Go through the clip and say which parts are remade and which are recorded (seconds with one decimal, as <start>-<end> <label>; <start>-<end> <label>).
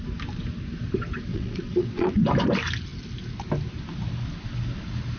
0.0-1.3 recorded; 1.3-2.2 remade; 2.2-5.2 recorded